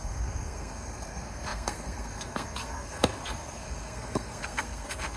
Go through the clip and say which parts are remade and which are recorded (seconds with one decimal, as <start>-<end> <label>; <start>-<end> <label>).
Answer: 0.0-5.2 remade